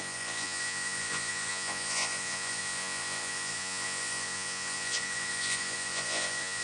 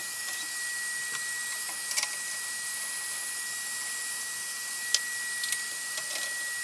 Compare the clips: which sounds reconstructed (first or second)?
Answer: first